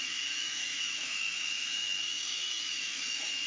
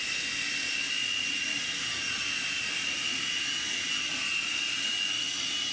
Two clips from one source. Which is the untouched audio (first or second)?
second